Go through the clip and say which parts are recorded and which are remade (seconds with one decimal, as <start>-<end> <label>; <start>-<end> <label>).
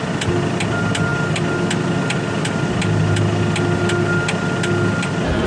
0.0-5.5 recorded